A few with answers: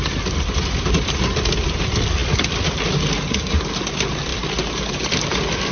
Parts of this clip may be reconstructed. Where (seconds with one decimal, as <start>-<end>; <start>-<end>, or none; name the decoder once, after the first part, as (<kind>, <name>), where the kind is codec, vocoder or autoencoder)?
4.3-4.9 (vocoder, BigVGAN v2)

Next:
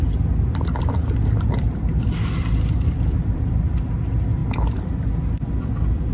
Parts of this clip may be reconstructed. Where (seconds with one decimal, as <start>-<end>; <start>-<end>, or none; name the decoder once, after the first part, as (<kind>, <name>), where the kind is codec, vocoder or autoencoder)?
0.0-4.4 (vocoder, BigVGAN v2)

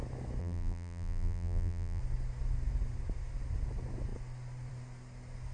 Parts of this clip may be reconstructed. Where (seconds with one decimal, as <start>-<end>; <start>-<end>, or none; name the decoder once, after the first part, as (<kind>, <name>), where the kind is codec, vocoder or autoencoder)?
0.4-2.0 (vocoder, BigVGAN v2)